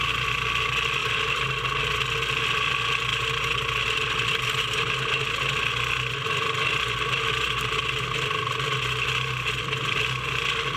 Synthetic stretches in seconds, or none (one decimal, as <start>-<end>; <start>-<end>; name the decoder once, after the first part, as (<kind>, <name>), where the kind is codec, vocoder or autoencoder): 1.0-1.8 (vocoder, BigVGAN v2)